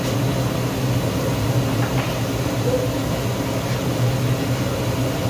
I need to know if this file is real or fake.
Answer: real